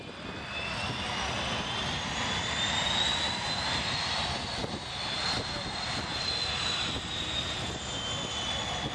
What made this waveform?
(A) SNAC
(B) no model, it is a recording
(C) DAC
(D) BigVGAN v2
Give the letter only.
B